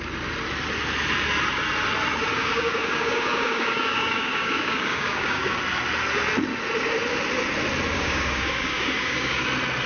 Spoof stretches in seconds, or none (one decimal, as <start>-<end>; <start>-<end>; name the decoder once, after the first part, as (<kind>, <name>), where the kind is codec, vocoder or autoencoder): 2.3-5.6 (codec, DAC); 7.9-9.4